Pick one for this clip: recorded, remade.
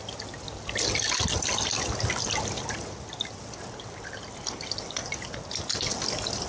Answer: recorded